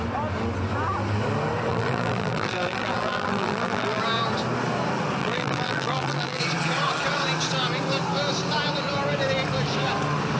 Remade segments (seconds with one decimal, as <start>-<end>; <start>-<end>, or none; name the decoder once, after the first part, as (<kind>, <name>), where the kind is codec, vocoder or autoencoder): 1.7-4.0 (vocoder, BigVGAN v2); 5.2-6.4